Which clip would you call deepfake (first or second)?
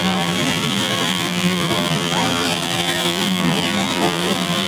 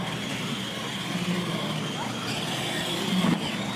first